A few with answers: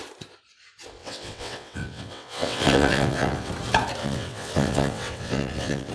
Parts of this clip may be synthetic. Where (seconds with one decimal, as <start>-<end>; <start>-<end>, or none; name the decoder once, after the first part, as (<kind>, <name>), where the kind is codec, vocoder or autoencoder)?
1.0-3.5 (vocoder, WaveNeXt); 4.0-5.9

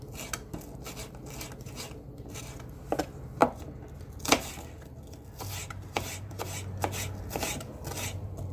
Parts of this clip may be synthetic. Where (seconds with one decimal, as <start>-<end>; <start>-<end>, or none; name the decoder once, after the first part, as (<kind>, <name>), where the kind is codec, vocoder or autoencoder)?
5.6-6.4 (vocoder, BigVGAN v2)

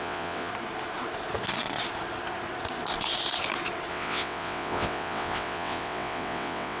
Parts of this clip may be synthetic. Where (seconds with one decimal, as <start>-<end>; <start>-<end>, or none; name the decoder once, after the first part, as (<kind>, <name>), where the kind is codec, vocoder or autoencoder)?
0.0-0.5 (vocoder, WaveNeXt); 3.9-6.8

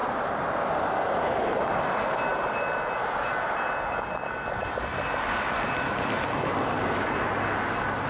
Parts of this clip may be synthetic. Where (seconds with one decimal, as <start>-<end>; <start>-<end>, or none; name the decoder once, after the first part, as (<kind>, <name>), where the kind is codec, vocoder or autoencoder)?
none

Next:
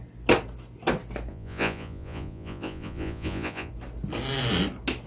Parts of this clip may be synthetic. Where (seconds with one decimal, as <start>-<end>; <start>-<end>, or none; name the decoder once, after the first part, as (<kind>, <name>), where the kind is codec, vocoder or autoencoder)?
1.3-3.7 (vocoder, Vocos)

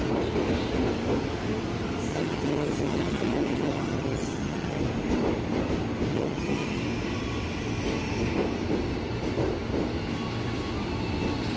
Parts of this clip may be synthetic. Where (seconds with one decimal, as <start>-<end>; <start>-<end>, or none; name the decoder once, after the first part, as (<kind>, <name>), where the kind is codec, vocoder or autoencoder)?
2.1-4.8 (vocoder, HiFi-GAN); 6.1-6.8

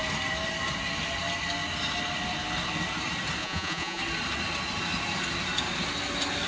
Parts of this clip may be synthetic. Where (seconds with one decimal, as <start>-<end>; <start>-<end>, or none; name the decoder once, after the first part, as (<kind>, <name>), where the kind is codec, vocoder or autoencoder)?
3.4-4.0 (vocoder, Vocos)

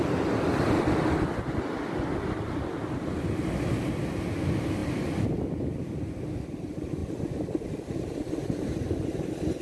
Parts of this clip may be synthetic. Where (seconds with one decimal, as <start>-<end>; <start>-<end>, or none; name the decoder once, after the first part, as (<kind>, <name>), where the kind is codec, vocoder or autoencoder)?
4.8-6.1 (vocoder, BigVGAN v2)